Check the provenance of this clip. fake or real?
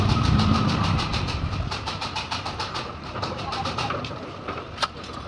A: fake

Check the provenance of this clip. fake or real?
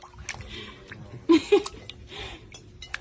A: real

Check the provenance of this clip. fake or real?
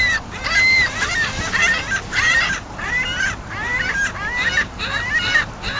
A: fake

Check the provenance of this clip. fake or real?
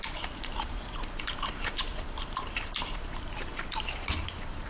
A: fake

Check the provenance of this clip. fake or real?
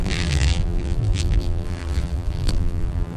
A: fake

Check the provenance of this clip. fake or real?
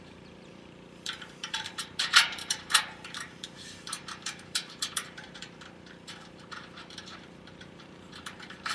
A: fake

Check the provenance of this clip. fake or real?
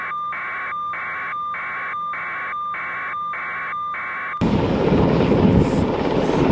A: real